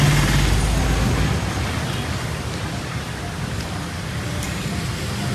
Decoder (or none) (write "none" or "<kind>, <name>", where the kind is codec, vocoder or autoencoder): none